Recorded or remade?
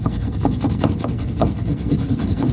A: remade